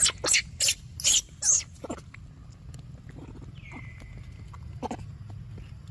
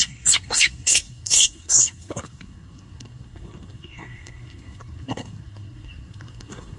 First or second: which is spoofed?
second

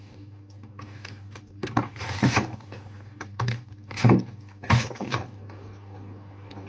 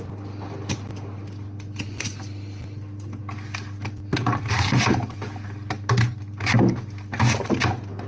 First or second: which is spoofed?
first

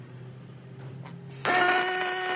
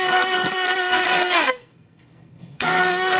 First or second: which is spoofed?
second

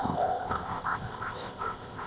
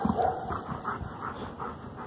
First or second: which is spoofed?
first